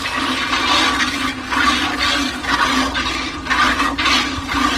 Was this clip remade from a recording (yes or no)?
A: no